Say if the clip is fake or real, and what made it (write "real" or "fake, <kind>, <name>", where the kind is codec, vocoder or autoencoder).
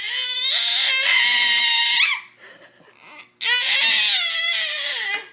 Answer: real